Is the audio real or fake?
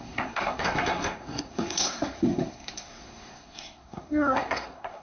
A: fake